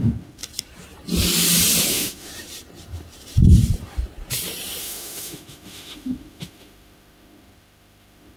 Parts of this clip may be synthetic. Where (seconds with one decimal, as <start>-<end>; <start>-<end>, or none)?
0.0-0.4; 1.9-2.3; 4.8-8.4